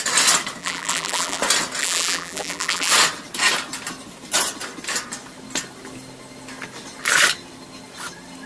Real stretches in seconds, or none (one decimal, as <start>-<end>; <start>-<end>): 0.0-0.6; 1.4-1.8; 2.9-8.5